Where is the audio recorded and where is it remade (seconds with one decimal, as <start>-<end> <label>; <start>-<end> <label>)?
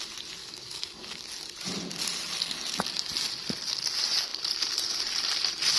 0.0-0.4 recorded; 0.4-1.2 remade; 1.2-5.8 recorded